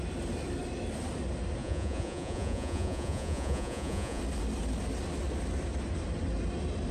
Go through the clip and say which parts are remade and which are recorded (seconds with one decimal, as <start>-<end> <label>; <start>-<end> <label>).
0.0-1.6 recorded; 1.6-4.2 remade; 4.2-6.9 recorded